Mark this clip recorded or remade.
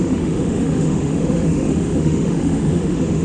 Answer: remade